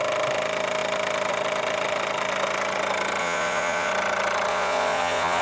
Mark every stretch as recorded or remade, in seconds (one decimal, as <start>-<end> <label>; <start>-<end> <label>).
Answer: 0.0-3.2 recorded; 3.2-3.9 remade; 3.9-4.5 recorded; 4.5-5.4 remade